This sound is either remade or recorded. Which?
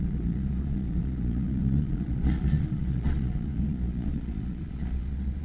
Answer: remade